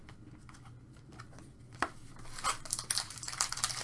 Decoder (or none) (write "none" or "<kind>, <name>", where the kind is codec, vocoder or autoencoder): none